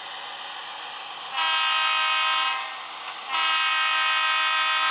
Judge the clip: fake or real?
real